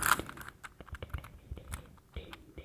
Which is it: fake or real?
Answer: real